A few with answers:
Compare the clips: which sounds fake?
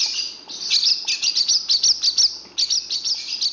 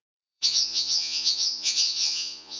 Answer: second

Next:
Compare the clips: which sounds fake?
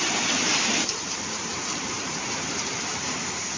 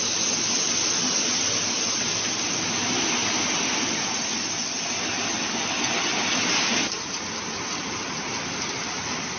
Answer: first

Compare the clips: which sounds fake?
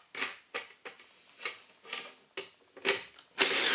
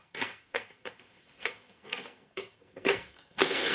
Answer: second